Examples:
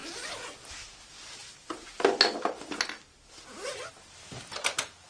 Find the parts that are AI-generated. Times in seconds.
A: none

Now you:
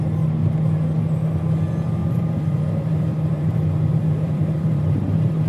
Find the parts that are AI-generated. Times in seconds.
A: 2.0-5.5 (vocoder, BigVGAN v2)